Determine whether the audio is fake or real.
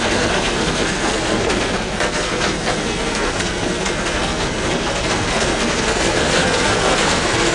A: fake